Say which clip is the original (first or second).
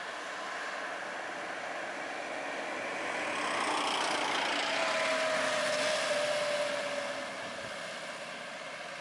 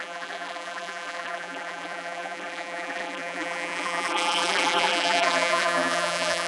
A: first